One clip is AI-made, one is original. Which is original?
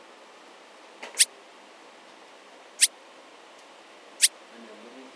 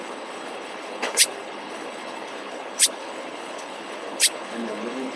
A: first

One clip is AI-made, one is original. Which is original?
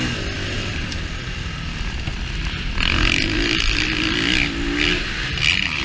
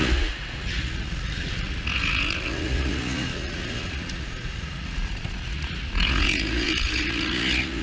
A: first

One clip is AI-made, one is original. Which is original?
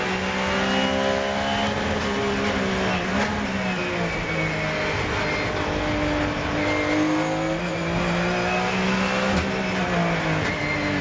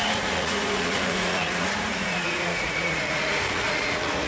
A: first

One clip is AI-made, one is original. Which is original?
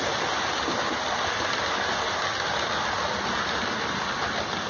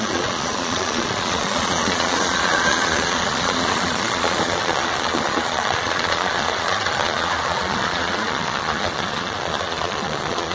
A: first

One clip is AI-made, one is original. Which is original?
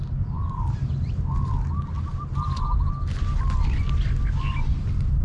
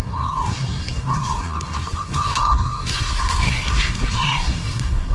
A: first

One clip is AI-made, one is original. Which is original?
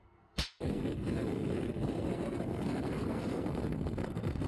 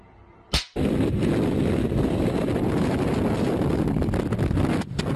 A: second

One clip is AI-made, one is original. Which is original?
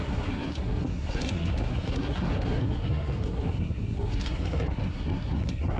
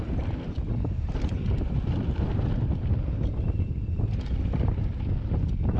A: second